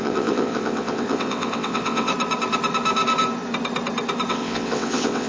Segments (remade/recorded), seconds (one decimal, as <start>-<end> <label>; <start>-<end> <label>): 0.0-2.1 remade; 2.1-4.3 recorded; 4.3-5.3 remade